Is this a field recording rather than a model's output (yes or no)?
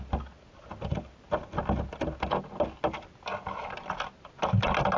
yes